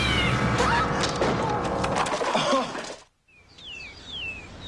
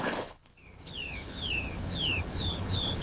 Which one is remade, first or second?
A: second